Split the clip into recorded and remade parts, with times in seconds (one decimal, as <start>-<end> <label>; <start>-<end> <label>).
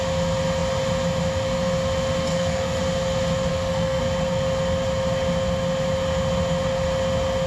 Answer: 0.0-2.3 recorded; 2.3-2.8 remade; 2.8-3.5 recorded; 3.5-4.0 remade; 4.0-7.5 recorded